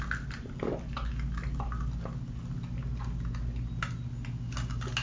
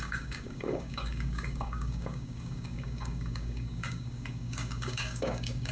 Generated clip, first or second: second